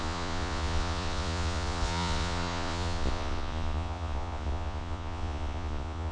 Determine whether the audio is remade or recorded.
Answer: remade